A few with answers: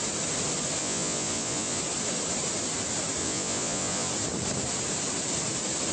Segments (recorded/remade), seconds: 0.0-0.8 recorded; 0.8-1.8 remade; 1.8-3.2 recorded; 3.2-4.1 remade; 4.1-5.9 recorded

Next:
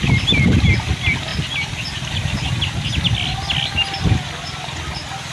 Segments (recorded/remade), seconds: 0.0-5.3 recorded

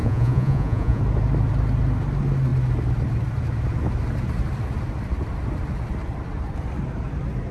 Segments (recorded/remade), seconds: 0.0-1.0 remade; 1.0-7.5 recorded

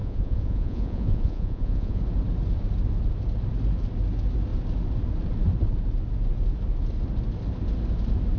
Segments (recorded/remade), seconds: 0.0-2.0 remade; 2.0-8.4 recorded

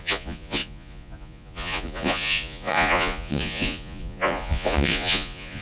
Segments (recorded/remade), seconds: 0.0-5.6 remade

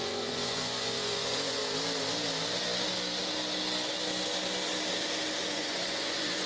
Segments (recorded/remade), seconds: 0.0-1.6 remade; 1.6-5.5 recorded; 5.5-6.5 remade